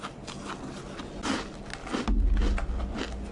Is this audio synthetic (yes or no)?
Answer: no